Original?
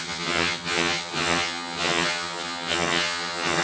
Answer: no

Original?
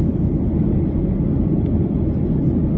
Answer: yes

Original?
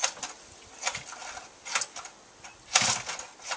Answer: yes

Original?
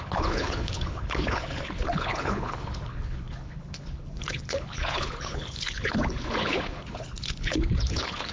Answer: no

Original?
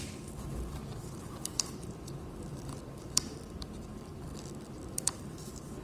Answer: no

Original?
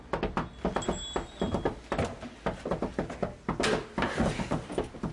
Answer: yes